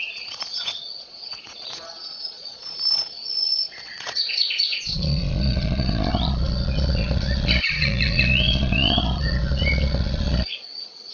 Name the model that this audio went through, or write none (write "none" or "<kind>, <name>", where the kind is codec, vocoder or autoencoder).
vocoder, Vocos